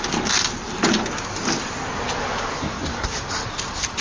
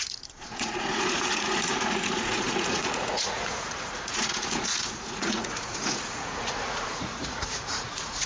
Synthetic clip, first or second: second